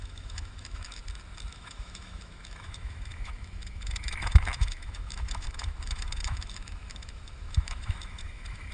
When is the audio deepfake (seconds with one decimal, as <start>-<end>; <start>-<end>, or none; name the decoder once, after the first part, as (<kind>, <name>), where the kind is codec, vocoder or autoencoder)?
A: 0.0-1.0 (autoencoder, DAC-VAE); 1.5-8.7